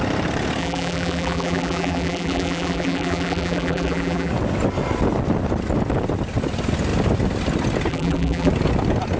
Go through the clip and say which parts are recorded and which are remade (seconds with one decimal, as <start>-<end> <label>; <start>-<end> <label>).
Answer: 0.0-0.6 recorded; 0.6-4.3 remade; 4.3-7.9 recorded; 7.9-8.5 remade; 8.5-9.2 recorded